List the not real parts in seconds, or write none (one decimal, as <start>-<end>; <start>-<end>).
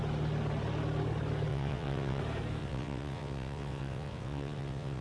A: 1.5-2.2; 2.6-5.0